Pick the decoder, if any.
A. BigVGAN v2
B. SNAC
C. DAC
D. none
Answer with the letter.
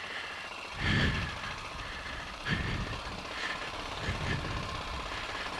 D